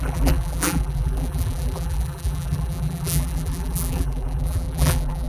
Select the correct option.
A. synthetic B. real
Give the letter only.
A